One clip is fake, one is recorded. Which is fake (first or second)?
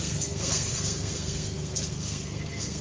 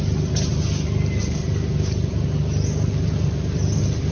first